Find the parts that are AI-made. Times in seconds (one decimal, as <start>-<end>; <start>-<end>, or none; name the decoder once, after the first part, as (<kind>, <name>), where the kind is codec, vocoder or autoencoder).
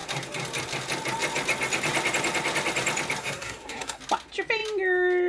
3.2-4.0 (codec, SNAC)